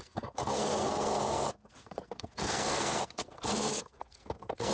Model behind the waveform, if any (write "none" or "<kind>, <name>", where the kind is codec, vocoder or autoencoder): codec, SNAC